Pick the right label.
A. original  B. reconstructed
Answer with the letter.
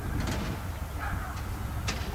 A